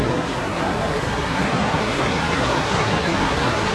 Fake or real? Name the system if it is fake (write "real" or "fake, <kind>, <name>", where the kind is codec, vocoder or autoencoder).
fake, codec, SNAC